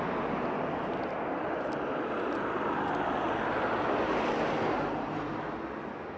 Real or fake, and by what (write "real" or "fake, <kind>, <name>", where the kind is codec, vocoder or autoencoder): real